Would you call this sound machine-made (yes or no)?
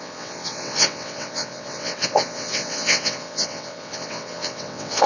yes